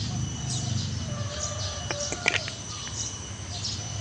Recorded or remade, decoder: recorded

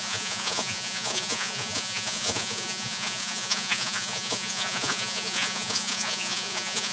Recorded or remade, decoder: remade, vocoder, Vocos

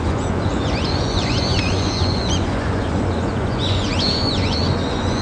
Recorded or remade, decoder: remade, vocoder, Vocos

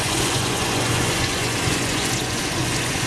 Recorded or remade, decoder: remade, vocoder, Vocos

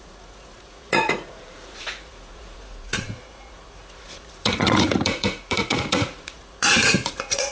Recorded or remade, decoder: remade, vocoder, Vocos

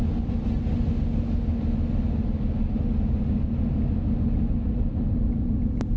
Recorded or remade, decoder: recorded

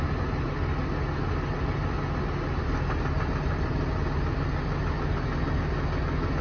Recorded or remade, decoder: recorded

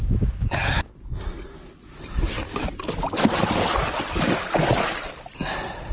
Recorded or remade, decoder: recorded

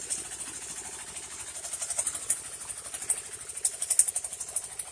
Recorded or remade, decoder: recorded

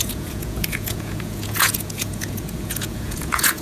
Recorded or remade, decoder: remade, vocoder, Vocos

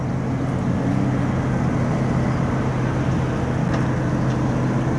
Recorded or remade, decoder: recorded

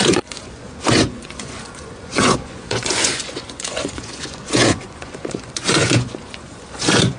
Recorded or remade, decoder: remade, vocoder, Vocos